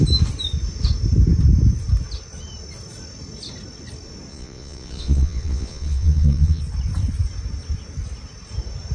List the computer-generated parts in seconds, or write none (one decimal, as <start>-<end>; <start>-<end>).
4.3-6.6